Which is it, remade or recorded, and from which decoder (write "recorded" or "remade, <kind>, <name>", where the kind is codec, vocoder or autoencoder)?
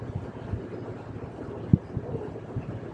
recorded